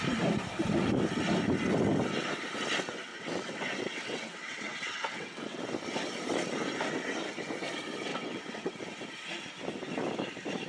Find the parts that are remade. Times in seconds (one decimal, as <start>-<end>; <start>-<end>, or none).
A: 3.1-5.6; 8.1-8.8